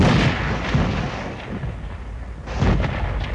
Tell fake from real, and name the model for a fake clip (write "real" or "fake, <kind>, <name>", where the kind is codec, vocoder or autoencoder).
real